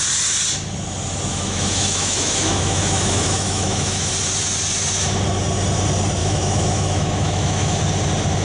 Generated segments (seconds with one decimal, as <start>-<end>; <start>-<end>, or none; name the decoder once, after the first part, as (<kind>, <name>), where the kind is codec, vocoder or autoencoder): 1.3-4.1 (autoencoder, DAC-VAE); 6.2-7.8